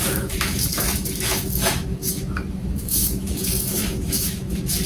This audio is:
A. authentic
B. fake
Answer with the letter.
B